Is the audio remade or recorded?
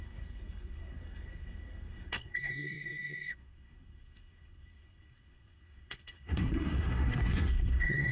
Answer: remade